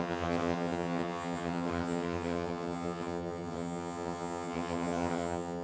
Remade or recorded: remade